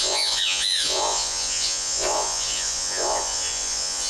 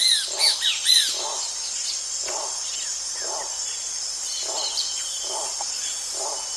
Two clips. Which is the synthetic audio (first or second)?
first